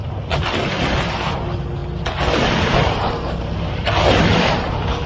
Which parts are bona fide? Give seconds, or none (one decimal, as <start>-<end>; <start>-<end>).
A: 0.0-5.1